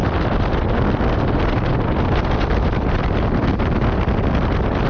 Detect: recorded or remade recorded